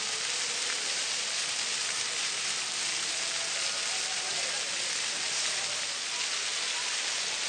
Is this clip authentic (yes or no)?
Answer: yes